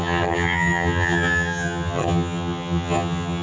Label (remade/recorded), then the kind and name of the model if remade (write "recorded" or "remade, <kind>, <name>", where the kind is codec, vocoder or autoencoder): remade, vocoder, HiFi-GAN